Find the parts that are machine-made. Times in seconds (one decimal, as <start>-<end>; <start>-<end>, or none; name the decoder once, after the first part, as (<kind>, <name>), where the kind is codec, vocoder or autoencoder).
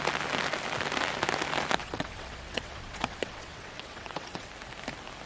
1.8-4.5 (vocoder, WaveNeXt)